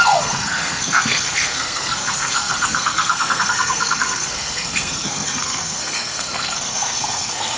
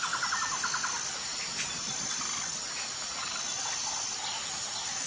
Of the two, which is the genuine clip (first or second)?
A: second